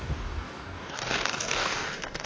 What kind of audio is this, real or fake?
fake